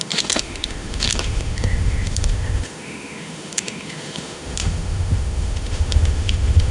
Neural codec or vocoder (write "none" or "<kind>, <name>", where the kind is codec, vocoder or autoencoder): autoencoder, DAC-VAE